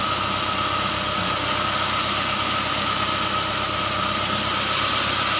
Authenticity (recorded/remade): recorded